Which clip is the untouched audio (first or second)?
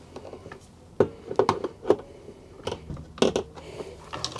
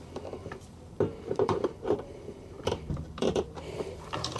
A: first